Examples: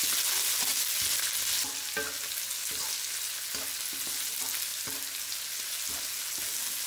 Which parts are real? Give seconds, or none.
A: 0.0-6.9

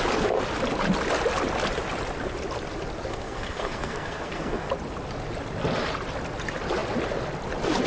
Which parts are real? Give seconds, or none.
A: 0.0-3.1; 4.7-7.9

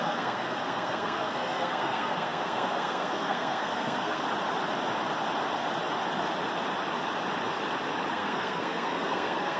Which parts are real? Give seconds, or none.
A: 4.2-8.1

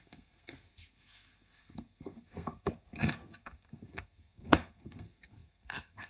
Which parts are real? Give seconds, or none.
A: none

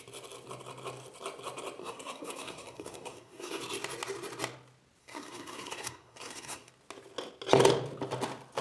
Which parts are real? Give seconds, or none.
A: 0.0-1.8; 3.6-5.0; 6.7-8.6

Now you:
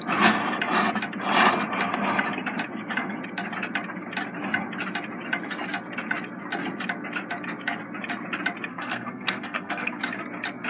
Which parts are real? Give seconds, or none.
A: 0.0-8.7; 10.0-10.7

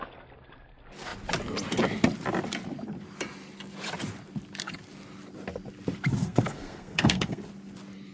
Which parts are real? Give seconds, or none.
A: 0.0-6.2; 7.4-8.1

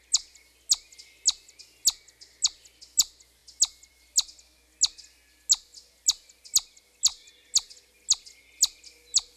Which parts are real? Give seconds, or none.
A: 0.0-9.4